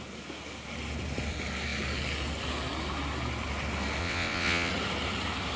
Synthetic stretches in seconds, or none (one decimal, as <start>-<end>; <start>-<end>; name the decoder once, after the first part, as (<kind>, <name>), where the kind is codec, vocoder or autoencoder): 4.0-4.7 (vocoder, WaveNeXt)